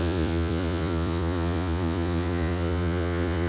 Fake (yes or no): yes